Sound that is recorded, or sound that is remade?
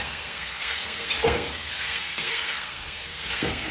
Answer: remade